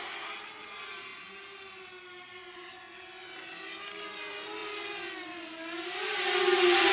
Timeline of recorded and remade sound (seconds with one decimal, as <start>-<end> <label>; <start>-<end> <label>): 0.0-6.9 recorded